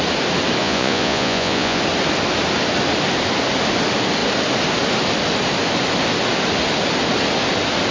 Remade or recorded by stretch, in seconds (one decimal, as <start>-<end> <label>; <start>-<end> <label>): 0.0-0.6 recorded; 0.6-1.8 remade; 1.8-7.9 recorded